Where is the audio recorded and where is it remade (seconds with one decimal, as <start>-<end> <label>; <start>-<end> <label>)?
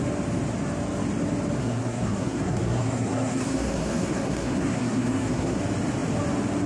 0.0-1.6 recorded; 1.6-5.6 remade; 5.6-6.7 recorded